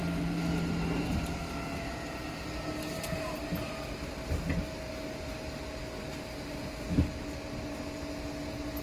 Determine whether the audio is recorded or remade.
recorded